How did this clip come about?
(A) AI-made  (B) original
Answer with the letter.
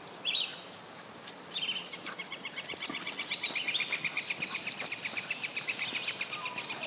B